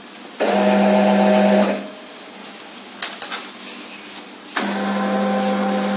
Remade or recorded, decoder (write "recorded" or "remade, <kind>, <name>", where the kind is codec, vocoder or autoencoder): recorded